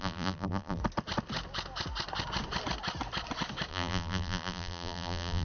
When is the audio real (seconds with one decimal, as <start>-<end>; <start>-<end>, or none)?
0.8-3.7